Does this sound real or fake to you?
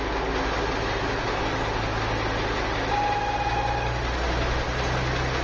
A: real